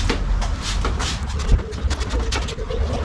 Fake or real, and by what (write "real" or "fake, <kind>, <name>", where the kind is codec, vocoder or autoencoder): real